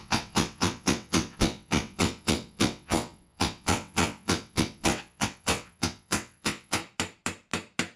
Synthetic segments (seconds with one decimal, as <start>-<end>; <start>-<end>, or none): 0.0-6.8